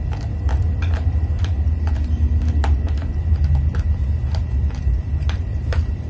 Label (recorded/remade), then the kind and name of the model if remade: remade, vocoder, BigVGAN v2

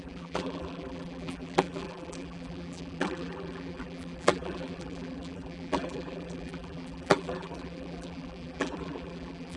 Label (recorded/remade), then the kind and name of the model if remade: remade, vocoder, BigVGAN v2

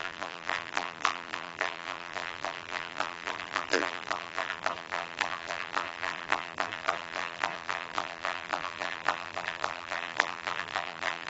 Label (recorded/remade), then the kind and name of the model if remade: remade, vocoder, BigVGAN v2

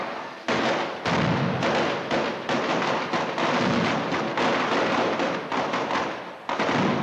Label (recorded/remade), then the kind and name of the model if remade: recorded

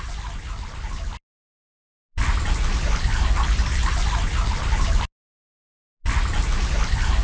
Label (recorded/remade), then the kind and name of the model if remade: recorded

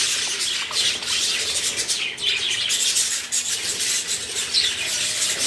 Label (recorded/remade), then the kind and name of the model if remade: recorded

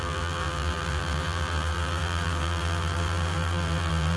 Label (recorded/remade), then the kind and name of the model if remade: remade, vocoder, BigVGAN v2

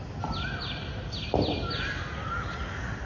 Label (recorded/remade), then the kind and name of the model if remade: recorded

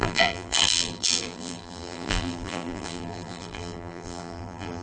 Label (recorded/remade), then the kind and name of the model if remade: remade, vocoder, BigVGAN v2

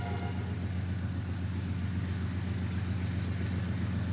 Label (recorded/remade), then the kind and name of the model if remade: recorded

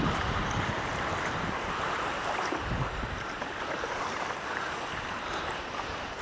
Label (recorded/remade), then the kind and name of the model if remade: remade, vocoder, BigVGAN v2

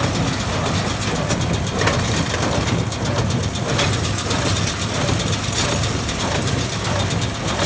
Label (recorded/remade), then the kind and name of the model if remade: remade, vocoder, BigVGAN v2